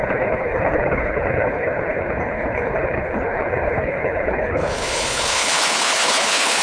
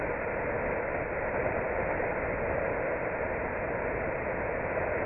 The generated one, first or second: first